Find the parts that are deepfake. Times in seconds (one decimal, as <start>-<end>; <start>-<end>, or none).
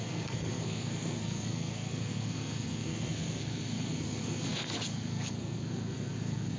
0.0-6.6